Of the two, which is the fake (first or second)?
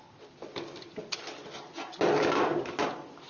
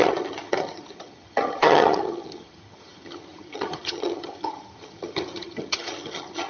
second